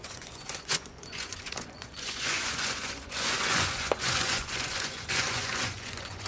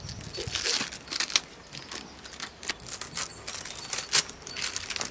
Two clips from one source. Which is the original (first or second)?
second